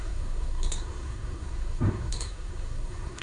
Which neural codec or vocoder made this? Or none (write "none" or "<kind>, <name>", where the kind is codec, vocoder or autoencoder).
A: codec, SNAC